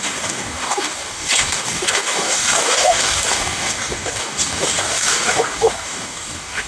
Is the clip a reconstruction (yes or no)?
yes